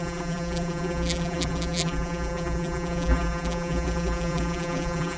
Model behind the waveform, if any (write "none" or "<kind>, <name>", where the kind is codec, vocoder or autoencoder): vocoder, BigVGAN v2